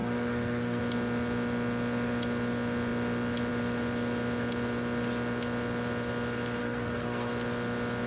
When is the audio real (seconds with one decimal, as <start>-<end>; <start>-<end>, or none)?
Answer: 0.8-6.6; 7.3-8.1